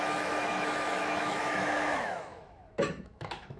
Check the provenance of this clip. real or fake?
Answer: fake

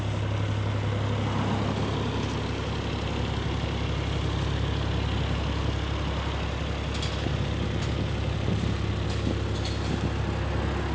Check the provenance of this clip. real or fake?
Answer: real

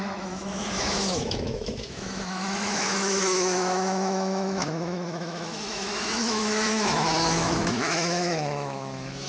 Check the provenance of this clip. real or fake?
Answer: fake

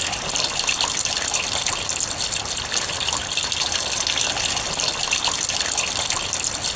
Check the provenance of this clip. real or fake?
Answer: real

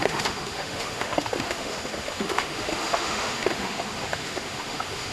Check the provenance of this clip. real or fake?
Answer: fake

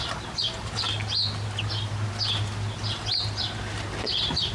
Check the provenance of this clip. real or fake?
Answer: real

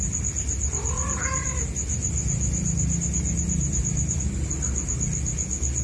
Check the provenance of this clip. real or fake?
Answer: real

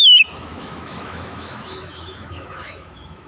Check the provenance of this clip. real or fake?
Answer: fake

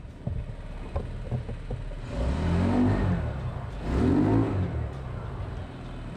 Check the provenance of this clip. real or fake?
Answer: real